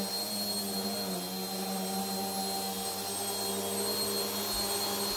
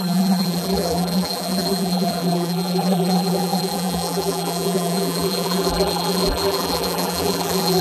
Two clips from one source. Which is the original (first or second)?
first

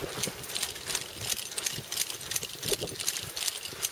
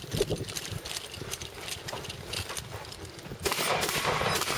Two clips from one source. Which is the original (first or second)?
first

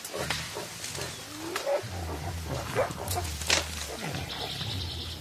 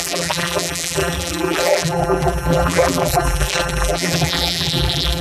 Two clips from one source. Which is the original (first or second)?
first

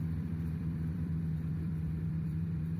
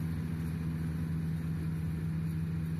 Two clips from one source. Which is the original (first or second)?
second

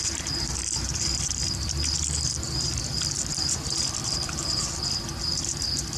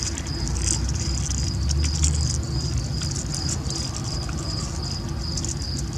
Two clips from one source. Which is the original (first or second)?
second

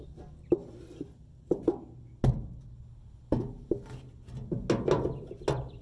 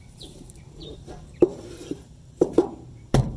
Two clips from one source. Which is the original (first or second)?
first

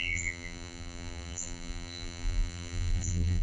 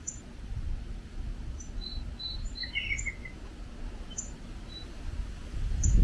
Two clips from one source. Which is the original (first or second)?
second